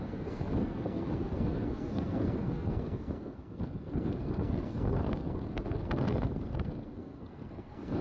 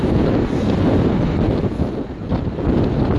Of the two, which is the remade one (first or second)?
first